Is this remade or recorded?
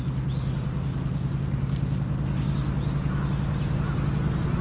recorded